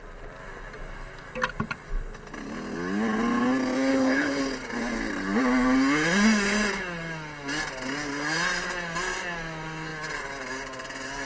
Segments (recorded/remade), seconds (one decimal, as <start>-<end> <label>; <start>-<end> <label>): 0.0-3.9 recorded; 3.9-4.4 remade; 4.4-11.3 recorded